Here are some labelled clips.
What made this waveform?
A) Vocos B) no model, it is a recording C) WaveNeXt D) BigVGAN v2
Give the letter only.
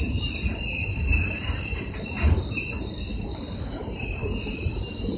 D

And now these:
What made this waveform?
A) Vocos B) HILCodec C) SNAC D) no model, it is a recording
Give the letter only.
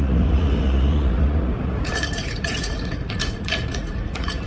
A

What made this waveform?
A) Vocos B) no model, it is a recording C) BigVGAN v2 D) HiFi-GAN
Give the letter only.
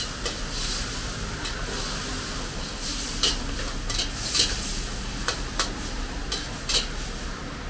B